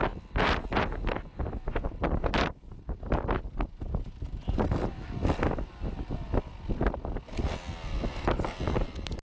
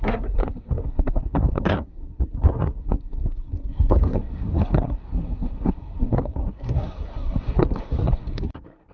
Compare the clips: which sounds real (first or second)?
first